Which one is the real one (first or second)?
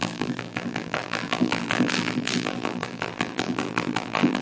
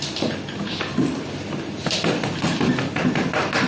second